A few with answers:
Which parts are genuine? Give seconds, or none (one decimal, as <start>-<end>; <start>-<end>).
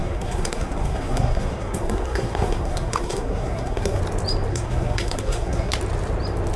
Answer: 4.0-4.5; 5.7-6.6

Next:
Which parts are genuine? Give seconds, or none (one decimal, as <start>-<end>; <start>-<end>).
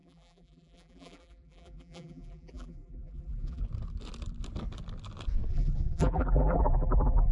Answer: 3.6-5.5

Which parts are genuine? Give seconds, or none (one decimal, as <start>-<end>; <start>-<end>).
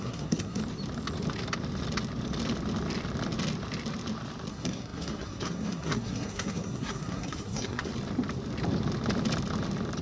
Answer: 0.6-4.5; 7.9-10.0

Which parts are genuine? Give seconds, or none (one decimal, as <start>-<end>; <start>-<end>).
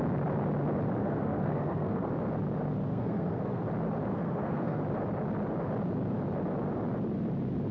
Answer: 0.0-1.0; 2.1-2.9; 3.6-4.1; 4.8-7.7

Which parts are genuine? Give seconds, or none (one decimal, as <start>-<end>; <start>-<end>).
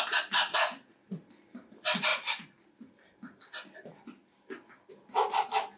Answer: 0.0-5.8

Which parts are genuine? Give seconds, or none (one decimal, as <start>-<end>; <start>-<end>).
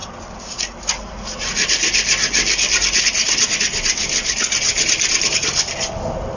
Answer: 0.0-6.4